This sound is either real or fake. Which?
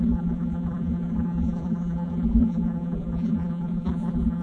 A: fake